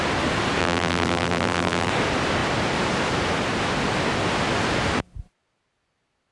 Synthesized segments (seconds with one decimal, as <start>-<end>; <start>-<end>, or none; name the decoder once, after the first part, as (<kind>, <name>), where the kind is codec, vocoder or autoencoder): 0.6-1.9 (vocoder, BigVGAN v2)